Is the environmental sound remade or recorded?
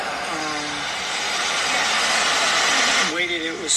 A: recorded